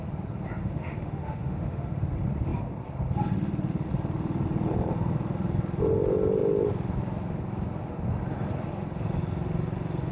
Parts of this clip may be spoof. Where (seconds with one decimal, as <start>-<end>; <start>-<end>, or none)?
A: 0.6-1.9